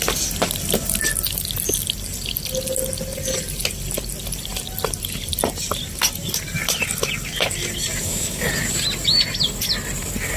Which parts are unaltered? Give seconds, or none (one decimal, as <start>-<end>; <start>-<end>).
0.0-8.0; 8.5-10.4